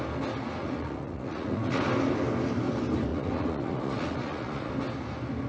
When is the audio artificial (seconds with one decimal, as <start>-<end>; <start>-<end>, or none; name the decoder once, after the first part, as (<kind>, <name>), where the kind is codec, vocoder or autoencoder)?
0.6-1.8 (vocoder, Vocos); 3.1-4.7